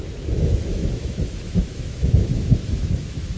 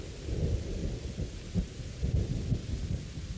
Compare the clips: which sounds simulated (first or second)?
first